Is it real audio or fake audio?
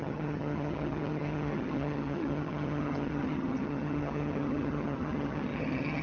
fake